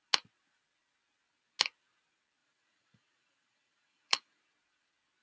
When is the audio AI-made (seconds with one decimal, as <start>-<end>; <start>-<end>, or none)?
2.4-4.4